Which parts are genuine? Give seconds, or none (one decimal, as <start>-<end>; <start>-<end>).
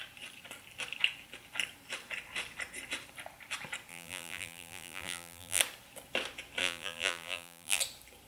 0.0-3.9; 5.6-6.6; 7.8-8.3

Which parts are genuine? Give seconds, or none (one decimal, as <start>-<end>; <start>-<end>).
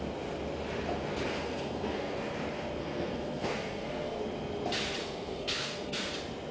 0.0-1.3; 2.2-2.8; 4.2-5.0; 6.1-6.5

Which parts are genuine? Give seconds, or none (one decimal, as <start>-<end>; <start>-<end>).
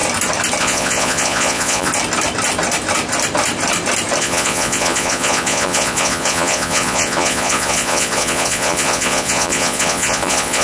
0.0-0.6; 1.9-4.2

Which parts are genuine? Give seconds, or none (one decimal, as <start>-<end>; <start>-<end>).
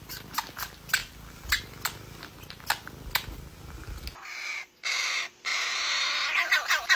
0.0-5.5; 6.5-7.0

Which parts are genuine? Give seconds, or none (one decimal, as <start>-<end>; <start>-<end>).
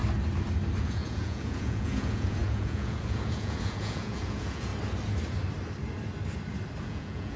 0.0-0.8; 4.7-6.8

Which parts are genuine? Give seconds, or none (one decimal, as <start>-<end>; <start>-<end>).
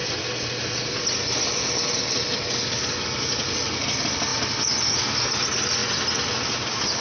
0.0-7.0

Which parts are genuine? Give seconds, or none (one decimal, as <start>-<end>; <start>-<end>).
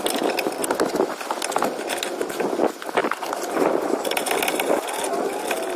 0.0-3.0; 4.7-5.8